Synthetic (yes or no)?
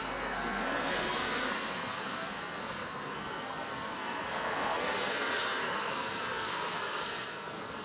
yes